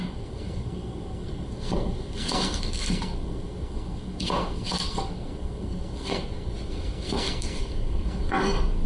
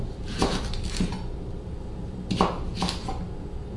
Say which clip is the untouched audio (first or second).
second